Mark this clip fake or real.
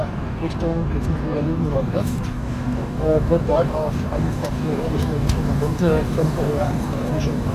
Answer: fake